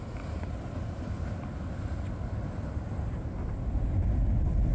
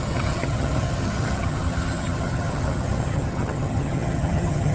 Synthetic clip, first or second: second